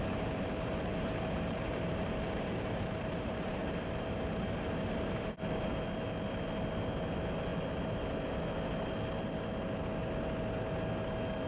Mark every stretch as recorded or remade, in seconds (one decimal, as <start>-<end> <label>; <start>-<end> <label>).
0.0-0.9 recorded; 0.9-5.7 remade; 5.7-11.5 recorded